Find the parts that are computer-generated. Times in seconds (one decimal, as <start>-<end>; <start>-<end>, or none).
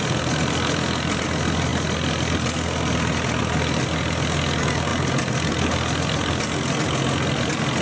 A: none